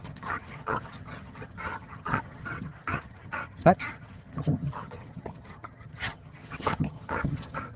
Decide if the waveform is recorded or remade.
remade